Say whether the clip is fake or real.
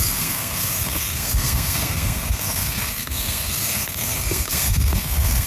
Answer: fake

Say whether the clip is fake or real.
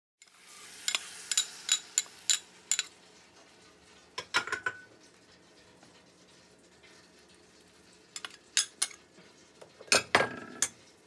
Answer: real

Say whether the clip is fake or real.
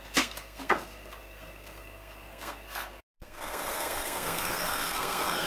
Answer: fake